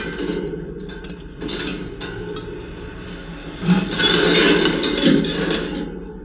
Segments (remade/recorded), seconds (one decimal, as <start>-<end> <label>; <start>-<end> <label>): 0.0-6.2 recorded